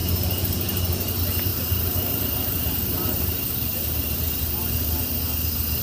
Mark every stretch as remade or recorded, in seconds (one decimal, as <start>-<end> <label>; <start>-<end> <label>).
0.0-1.1 remade; 1.1-1.5 recorded; 1.5-4.2 remade; 4.2-5.8 recorded